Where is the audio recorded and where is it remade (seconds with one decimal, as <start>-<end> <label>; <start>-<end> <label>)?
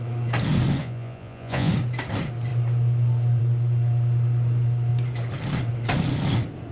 0.0-0.8 recorded; 0.8-1.7 remade; 1.7-6.7 recorded